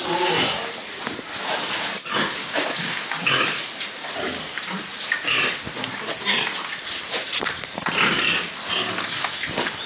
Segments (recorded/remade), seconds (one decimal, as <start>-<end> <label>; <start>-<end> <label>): 0.0-2.4 recorded; 2.4-3.3 remade; 3.3-9.9 recorded